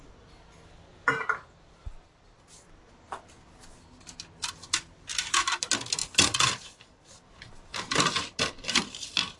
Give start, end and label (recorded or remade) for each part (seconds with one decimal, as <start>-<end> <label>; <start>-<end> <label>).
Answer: 0.0-9.4 recorded